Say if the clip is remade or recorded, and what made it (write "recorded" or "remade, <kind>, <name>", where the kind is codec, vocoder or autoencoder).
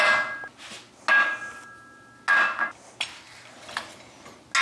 recorded